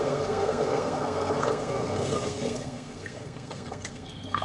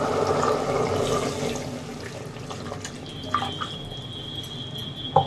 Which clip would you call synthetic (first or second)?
first